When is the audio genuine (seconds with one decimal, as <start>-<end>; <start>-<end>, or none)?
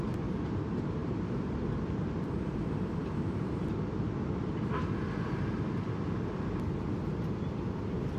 0.0-8.2